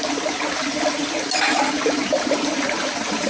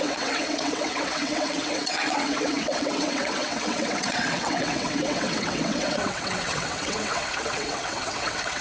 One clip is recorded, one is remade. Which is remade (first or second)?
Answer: second